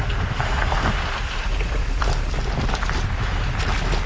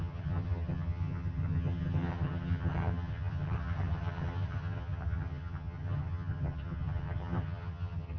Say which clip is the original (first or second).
first